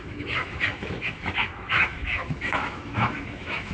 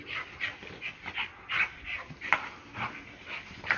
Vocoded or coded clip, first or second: first